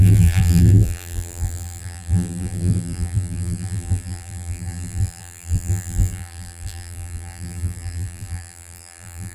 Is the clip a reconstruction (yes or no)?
yes